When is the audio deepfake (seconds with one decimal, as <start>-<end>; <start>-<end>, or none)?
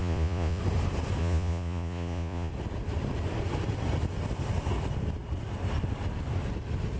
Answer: 0.0-0.6; 1.2-2.5